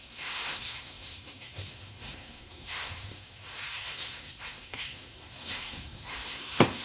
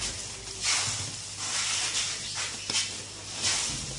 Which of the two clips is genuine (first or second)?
second